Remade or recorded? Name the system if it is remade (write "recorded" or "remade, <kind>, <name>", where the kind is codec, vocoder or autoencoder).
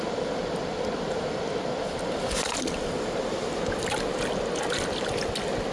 recorded